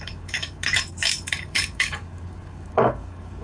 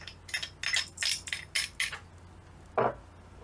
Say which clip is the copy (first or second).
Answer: first